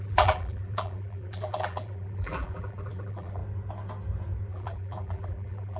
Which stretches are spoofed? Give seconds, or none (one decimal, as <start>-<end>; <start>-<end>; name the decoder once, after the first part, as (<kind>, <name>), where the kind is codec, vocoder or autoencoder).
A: 0.0-3.4 (vocoder, BigVGAN v2); 4.5-5.8